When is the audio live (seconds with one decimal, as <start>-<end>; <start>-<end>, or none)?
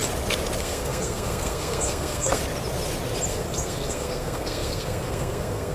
0.0-0.6; 2.4-3.3